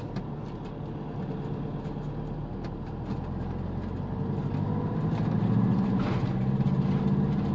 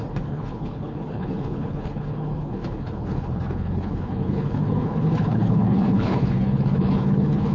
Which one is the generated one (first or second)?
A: second